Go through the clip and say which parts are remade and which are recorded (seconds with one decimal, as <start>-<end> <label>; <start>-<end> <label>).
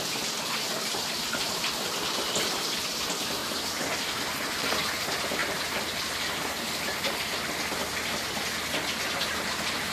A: 0.0-9.9 recorded